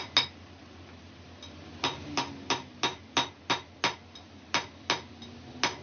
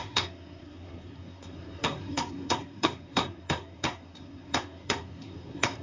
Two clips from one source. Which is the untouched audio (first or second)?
first